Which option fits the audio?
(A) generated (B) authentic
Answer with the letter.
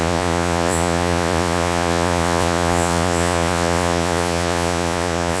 A